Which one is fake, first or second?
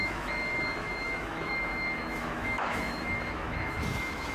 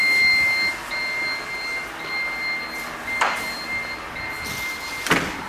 first